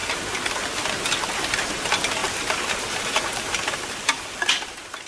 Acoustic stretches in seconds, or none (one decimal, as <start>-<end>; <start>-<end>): 0.0-2.2; 4.4-5.1